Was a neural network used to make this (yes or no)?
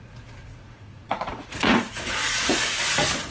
yes